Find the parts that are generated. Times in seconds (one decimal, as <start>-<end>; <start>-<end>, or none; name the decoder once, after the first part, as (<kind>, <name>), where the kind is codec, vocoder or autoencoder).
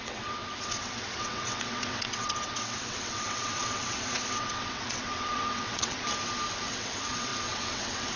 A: 0.0-6.0 (vocoder, WaveNeXt); 6.7-8.2